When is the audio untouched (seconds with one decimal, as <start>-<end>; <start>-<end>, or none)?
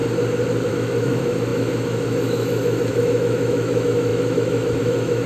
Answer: 0.0-0.7